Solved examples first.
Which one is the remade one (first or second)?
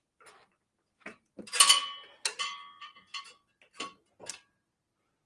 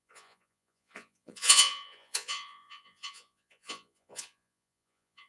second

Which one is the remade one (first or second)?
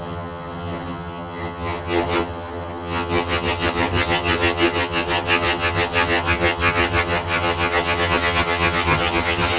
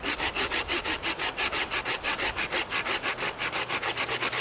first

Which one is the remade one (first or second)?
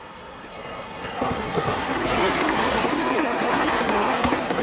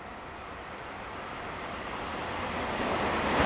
first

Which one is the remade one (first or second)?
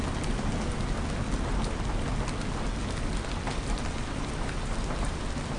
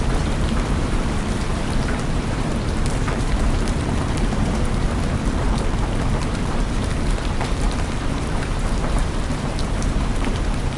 second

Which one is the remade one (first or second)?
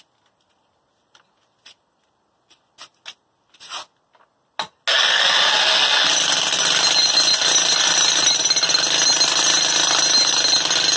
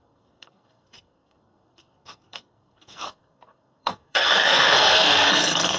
second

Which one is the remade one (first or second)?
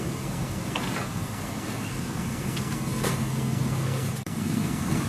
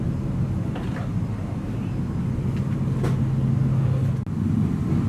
first